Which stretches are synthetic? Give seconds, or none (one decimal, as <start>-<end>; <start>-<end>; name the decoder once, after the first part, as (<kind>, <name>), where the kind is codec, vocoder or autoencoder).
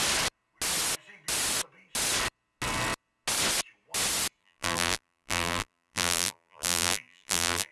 4.4-7.7 (vocoder, BigVGAN v2)